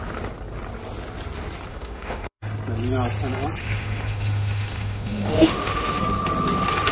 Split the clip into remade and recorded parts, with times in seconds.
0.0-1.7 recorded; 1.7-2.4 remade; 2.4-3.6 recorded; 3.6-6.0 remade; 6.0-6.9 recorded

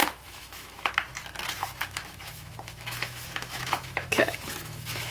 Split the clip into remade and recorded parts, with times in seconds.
0.0-0.9 remade; 0.9-1.6 recorded; 1.6-5.1 remade